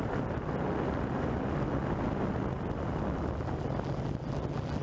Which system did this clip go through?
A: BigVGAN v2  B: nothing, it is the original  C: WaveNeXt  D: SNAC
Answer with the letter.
B